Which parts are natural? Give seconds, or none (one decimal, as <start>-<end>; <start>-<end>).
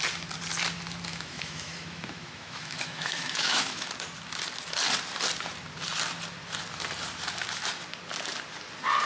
0.0-1.1; 3.9-9.1